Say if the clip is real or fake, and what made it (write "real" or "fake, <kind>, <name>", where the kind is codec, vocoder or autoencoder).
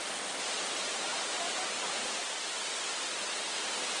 real